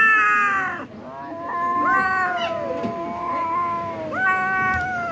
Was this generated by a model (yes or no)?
no